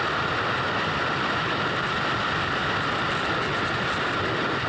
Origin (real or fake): real